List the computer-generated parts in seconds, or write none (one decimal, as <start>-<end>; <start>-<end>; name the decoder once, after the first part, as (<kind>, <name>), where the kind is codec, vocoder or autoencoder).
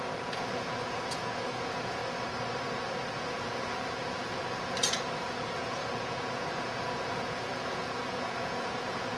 0.0-2.0 (vocoder, Vocos); 3.1-9.2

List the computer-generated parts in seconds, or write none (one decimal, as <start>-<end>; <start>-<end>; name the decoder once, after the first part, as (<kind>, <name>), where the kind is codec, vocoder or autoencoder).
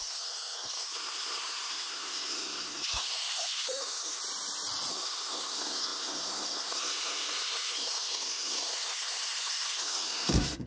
0.0-4.2 (codec, SNAC); 4.9-10.7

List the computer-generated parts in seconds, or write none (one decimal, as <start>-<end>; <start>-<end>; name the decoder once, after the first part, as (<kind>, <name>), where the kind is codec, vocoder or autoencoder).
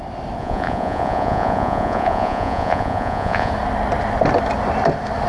0.4-3.5 (vocoder, Vocos)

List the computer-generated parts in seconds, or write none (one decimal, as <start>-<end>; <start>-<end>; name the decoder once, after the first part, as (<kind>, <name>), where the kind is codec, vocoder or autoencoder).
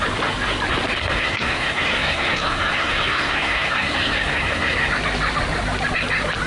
1.0-4.9 (codec, SNAC)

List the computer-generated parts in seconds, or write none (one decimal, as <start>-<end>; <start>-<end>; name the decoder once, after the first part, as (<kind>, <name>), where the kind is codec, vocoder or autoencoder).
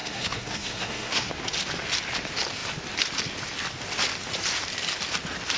0.0-1.3 (codec, SNAC)